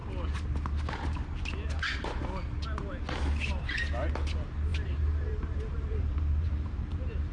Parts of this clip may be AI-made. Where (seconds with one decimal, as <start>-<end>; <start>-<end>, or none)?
4.7-7.3